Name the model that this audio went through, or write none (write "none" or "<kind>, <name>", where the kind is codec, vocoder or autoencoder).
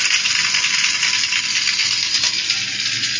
none